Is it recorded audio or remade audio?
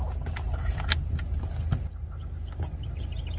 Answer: recorded